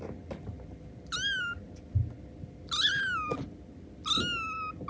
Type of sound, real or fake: real